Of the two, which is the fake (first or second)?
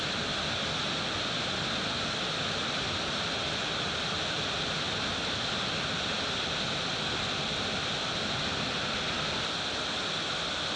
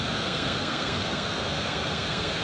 second